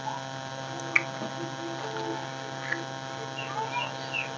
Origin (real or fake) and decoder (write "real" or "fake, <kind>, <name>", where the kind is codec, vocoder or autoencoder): real